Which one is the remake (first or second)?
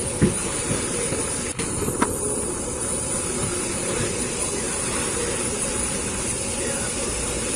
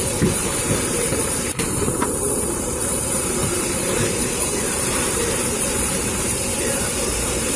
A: second